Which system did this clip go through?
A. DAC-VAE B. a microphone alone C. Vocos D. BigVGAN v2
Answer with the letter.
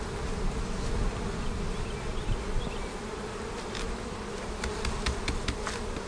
B